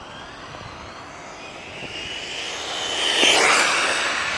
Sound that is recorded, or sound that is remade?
recorded